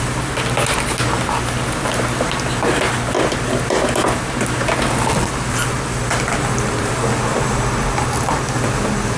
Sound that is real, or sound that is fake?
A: real